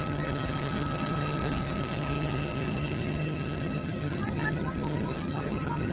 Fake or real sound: fake